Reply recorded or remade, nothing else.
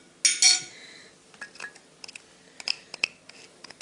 recorded